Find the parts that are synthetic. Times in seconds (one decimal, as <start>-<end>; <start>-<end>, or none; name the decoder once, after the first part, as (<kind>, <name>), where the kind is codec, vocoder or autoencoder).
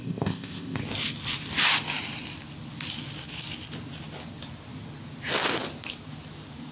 0.0-0.8 (codec, ZipCodec)